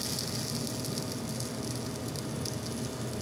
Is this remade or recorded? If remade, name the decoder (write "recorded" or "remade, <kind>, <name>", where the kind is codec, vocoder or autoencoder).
recorded